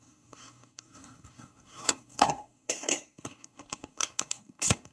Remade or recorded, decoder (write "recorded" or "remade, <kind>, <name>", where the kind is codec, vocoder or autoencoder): remade, codec, SNAC